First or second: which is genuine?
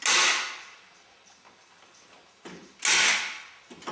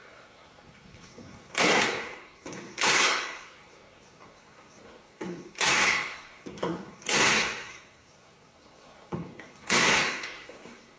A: first